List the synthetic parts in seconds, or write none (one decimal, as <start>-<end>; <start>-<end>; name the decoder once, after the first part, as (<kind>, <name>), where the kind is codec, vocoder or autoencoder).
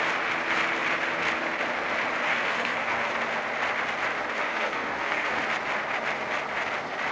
2.3-3.1 (codec, SNAC); 4.5-5.4